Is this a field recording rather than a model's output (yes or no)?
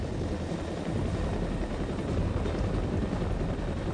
yes